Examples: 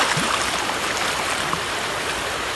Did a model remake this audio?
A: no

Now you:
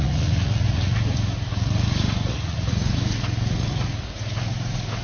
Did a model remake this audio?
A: yes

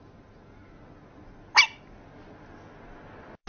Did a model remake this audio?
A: no